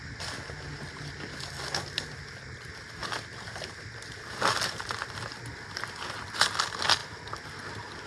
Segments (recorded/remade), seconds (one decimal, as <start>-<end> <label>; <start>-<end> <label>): 0.0-3.0 recorded; 3.0-5.2 remade; 5.2-7.0 recorded; 7.0-8.1 remade